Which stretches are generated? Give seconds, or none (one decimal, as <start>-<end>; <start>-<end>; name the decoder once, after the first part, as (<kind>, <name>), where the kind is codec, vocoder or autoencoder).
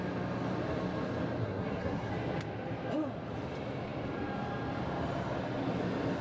1.4-2.1 (codec, SNAC)